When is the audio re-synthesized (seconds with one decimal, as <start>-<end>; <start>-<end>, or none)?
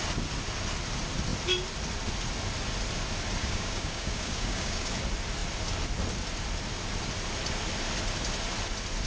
3.4-4.9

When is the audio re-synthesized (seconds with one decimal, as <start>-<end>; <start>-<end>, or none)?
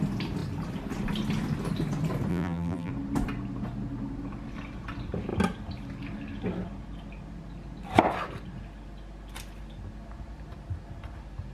2.3-2.9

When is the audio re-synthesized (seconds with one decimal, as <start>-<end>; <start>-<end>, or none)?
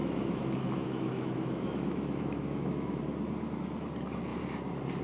0.0-3.0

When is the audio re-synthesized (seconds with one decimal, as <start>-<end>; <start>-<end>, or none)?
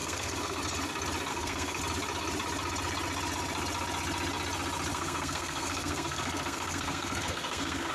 0.0-0.6; 1.3-1.8; 4.9-7.9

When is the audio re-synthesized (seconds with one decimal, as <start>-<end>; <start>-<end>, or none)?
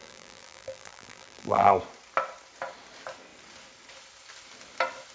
0.0-1.7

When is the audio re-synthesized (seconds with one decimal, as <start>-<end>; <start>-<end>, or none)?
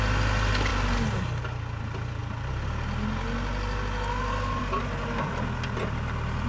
none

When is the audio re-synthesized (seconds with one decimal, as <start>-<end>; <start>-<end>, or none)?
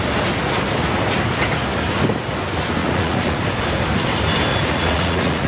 2.8-3.4; 4.5-5.5